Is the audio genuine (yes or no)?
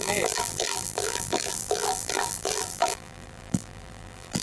no